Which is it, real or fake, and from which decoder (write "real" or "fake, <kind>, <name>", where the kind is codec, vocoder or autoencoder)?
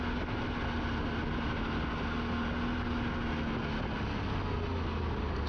real